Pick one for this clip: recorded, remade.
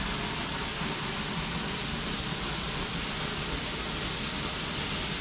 recorded